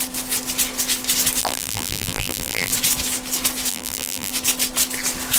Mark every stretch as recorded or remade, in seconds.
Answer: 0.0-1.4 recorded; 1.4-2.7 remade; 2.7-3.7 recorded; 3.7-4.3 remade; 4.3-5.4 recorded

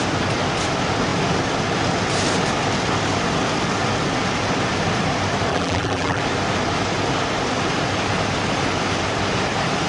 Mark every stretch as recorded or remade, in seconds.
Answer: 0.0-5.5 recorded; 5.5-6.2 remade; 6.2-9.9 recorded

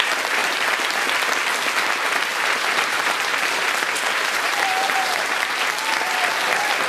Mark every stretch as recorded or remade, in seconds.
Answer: 0.0-0.4 recorded; 0.4-0.9 remade; 0.9-2.3 recorded; 2.3-5.7 remade; 5.7-6.9 recorded